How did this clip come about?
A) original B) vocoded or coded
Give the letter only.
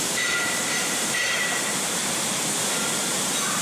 B